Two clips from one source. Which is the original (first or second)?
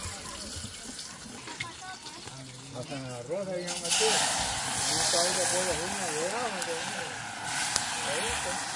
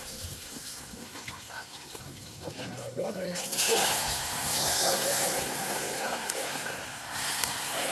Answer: first